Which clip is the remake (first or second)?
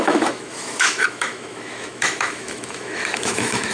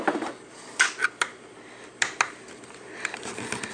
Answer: first